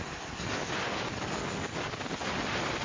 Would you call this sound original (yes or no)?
yes